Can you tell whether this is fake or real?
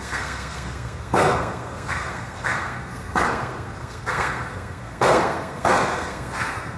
fake